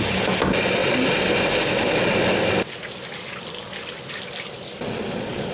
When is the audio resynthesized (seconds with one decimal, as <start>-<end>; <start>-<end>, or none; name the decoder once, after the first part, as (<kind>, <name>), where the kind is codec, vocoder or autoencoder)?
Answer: none